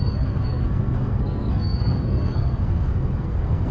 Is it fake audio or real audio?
fake